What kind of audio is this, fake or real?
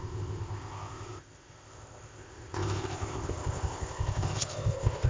fake